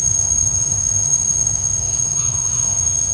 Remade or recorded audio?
remade